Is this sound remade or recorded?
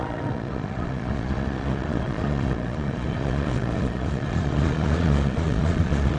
remade